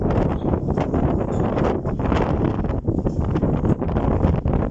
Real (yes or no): yes